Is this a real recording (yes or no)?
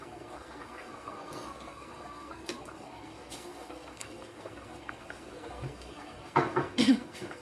no